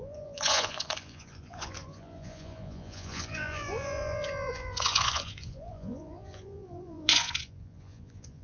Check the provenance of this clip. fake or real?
fake